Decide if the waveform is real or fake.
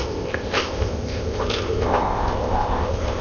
fake